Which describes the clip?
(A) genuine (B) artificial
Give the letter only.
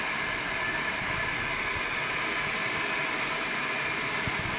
A